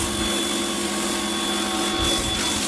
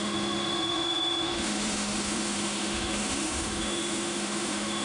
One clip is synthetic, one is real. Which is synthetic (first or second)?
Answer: second